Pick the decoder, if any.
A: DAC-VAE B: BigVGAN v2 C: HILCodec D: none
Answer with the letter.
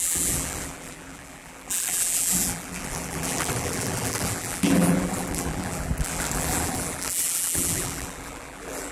B